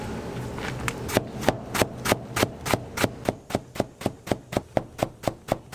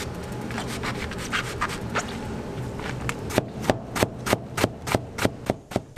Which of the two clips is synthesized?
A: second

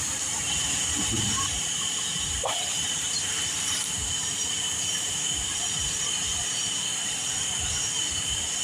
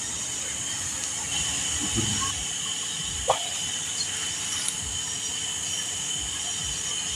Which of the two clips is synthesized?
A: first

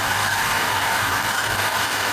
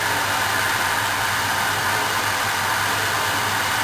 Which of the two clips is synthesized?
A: first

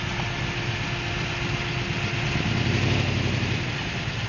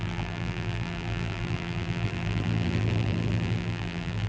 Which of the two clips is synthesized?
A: second